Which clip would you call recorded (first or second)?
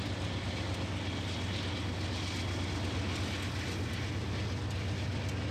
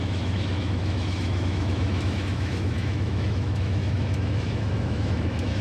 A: first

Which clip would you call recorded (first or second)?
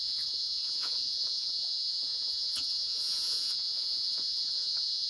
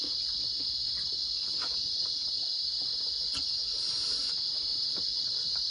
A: second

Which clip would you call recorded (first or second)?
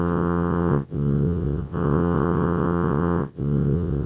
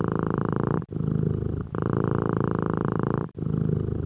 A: second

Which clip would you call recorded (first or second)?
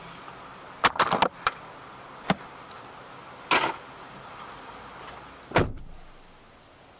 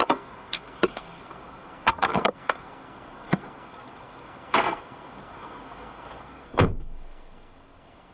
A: first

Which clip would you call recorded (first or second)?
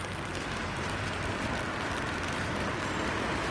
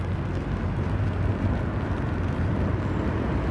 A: second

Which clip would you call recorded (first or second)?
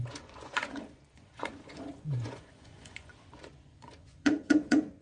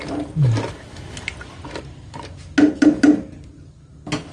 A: second